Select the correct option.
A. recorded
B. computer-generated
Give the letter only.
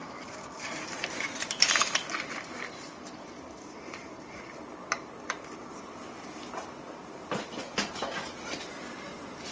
B